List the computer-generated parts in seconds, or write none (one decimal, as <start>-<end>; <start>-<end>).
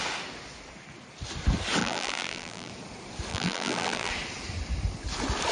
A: 1.8-2.7; 3.3-4.1